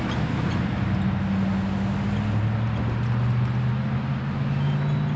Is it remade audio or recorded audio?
recorded